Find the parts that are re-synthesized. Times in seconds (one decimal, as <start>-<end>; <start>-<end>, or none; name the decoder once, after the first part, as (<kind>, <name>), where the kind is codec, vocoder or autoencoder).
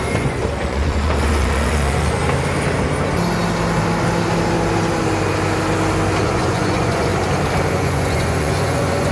0.0-2.2 (vocoder, Vocos); 6.2-7.1; 7.7-9.1